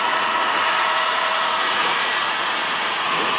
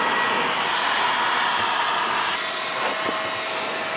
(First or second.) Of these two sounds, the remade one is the first